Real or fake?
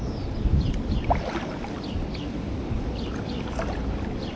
real